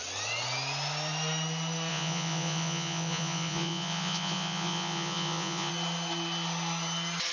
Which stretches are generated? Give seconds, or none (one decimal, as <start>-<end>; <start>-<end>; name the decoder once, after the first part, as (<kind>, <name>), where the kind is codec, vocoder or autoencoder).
1.9-5.7 (vocoder, Vocos)